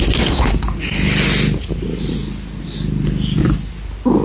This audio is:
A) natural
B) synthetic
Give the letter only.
A